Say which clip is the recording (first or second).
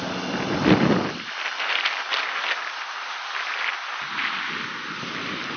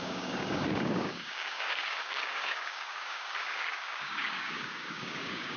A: first